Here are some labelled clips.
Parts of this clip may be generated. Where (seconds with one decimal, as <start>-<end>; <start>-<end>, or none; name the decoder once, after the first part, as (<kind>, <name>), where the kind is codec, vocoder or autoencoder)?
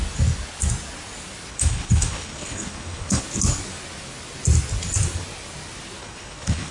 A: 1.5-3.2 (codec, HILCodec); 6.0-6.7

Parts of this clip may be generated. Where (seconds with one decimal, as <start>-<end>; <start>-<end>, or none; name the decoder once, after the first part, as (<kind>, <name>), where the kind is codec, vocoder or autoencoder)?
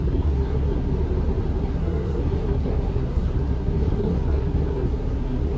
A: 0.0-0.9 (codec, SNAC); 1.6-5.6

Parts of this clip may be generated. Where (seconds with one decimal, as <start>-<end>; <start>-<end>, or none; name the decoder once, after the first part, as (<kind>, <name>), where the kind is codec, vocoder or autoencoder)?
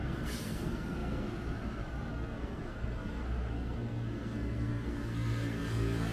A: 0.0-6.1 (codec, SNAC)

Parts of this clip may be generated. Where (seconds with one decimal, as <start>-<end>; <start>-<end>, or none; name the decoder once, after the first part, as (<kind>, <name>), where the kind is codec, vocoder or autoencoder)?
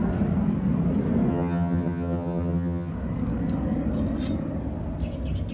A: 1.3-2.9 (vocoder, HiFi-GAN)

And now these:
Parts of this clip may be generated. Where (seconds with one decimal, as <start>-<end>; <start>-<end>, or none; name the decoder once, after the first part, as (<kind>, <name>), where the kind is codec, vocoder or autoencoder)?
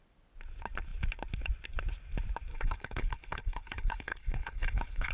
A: 2.5-5.1 (codec, HILCodec)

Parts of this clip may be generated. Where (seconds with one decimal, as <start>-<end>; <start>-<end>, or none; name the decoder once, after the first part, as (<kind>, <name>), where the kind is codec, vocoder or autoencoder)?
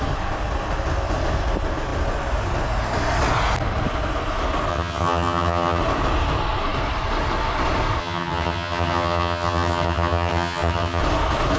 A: 4.7-5.8 (vocoder, HiFi-GAN); 8.0-11.0